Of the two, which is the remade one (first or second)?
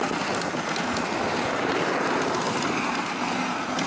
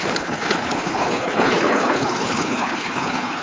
second